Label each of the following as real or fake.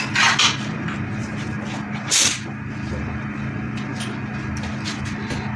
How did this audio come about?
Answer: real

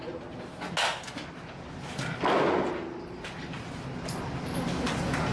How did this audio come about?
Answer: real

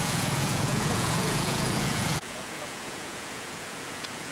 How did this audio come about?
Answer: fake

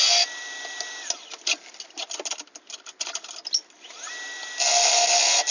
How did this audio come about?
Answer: real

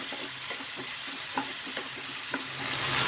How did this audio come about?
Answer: real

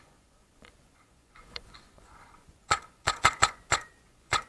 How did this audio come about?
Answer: fake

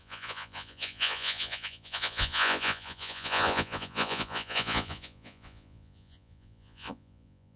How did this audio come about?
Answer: fake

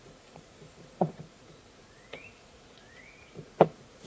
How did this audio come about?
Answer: fake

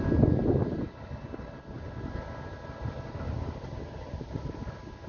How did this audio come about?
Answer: real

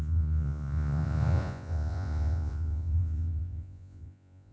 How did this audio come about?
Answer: fake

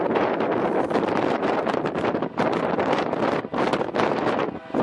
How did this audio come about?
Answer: real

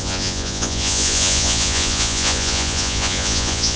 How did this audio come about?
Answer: fake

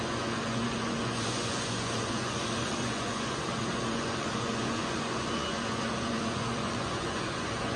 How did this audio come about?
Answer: fake